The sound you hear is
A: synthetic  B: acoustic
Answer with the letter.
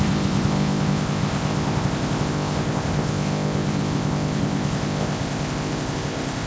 A